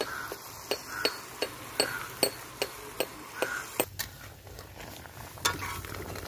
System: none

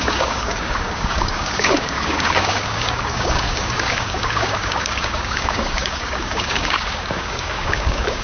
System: codec, DAC